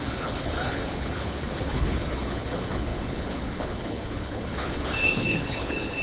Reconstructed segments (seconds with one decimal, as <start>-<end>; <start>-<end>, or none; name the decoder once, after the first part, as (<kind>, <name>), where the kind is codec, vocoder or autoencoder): 0.0-6.0 (codec, HILCodec)